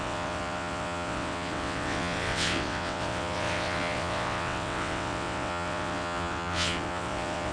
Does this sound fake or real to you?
fake